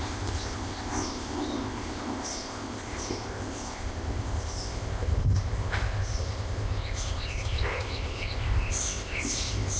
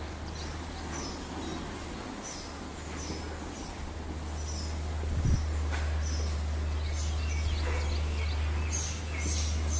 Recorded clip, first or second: second